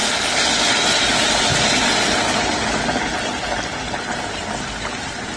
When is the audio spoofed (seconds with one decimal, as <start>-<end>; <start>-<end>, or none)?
1.5-4.0